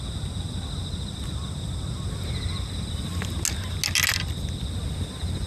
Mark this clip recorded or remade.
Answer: recorded